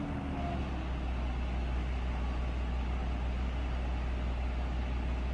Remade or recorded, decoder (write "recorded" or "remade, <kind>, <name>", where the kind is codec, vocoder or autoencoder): recorded